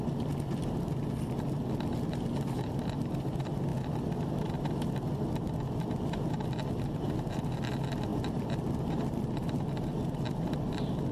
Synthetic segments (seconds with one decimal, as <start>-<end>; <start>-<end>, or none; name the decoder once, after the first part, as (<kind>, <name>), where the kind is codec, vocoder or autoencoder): 8.1-9.5 (vocoder, BigVGAN v2)